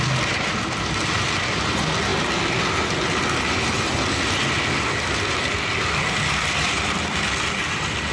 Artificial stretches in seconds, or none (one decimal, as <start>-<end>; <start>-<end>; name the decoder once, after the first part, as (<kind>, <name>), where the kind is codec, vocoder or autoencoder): none